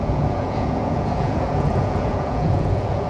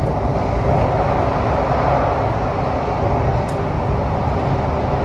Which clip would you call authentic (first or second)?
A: second